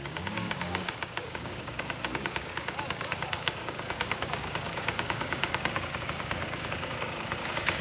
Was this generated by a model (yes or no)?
yes